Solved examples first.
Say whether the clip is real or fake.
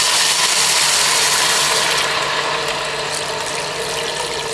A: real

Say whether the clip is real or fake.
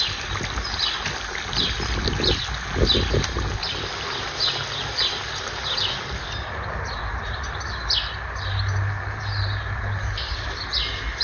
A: real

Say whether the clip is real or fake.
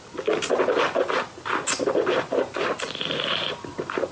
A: real